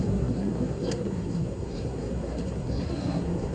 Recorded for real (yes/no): no